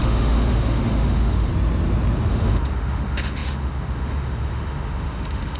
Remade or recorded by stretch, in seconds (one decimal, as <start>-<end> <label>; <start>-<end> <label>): 0.0-1.5 remade; 1.5-2.3 recorded; 2.3-5.6 remade